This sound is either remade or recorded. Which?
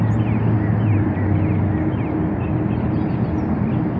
recorded